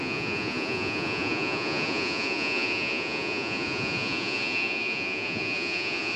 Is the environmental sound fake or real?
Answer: fake